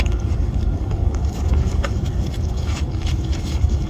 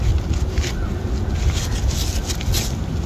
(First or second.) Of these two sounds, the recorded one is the second